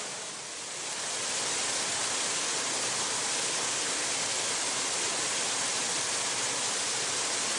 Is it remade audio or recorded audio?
recorded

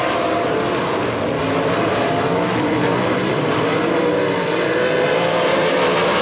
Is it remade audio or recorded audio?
remade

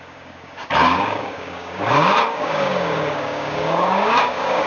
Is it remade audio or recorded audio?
remade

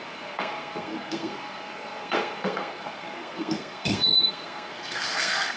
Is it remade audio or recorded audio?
remade